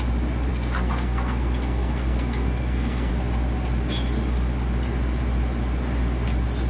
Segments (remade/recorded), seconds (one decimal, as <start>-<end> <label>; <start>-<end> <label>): 0.0-0.5 recorded; 0.5-3.1 remade; 3.1-6.7 recorded